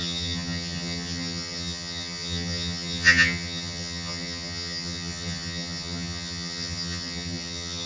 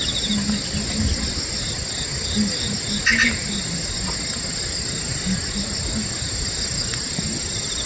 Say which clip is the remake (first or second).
first